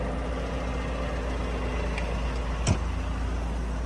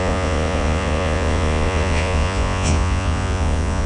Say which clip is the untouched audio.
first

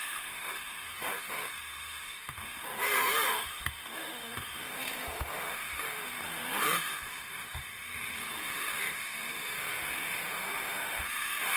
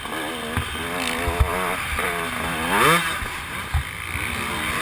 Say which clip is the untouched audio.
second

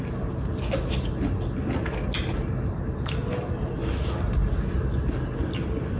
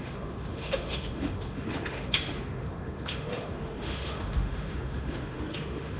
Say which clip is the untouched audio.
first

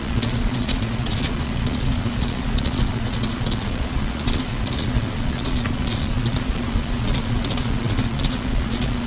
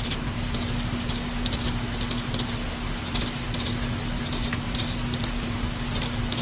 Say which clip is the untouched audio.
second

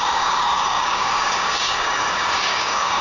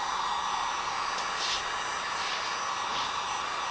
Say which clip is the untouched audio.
second